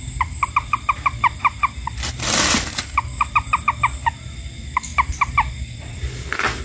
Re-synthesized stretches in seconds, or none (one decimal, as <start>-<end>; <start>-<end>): none

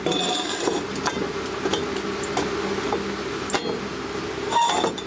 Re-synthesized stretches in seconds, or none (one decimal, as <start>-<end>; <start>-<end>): none

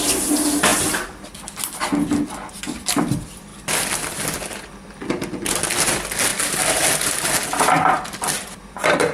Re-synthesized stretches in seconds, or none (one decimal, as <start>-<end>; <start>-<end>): none

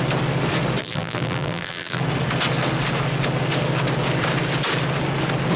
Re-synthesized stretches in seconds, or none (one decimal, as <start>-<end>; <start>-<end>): 0.8-2.0

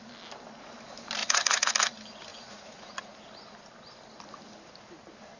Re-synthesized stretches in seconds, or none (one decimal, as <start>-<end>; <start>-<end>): 1.2-1.7; 2.3-3.1